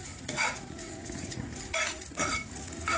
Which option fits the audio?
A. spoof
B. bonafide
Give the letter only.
A